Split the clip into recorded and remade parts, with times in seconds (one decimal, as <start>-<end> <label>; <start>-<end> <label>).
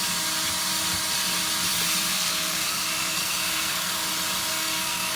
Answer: 0.0-2.1 recorded; 2.1-4.1 remade; 4.1-4.5 recorded; 4.5-5.2 remade